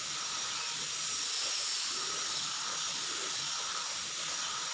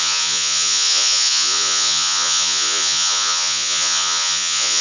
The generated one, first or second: second